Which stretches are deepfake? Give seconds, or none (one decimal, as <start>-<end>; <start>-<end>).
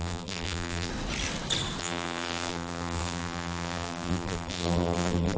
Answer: 0.0-0.9; 1.8-5.4